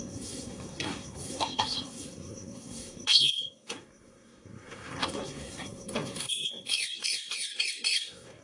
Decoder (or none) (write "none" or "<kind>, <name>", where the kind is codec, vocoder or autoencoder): codec, SNAC